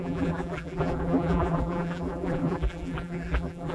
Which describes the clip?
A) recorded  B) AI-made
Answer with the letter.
B